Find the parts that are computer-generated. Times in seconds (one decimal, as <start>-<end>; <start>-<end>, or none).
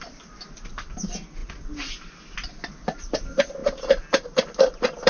none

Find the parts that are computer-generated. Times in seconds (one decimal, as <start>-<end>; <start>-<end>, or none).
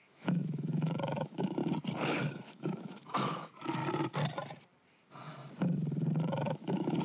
0.0-1.6; 2.2-3.8; 6.3-7.0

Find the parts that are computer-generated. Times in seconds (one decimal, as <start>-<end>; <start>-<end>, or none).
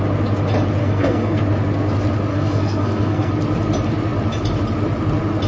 0.8-1.4; 2.3-3.3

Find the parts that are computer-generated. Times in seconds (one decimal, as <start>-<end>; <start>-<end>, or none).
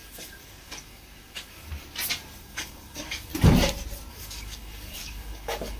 0.0-1.7; 2.4-3.3; 4.1-5.8